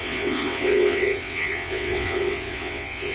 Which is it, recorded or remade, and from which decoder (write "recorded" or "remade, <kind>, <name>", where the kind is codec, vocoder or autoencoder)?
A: remade, vocoder, WaveNeXt